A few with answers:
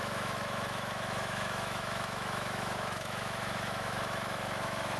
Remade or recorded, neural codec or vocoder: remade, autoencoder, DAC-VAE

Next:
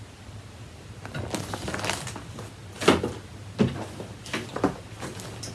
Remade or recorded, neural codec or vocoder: recorded